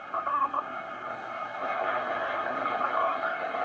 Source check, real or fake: fake